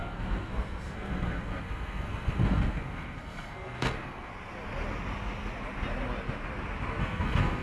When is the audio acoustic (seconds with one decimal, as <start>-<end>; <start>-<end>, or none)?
4.3-7.0